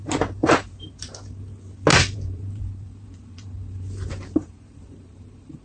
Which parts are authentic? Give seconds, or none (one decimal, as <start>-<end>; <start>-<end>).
0.0-0.4; 0.9-1.9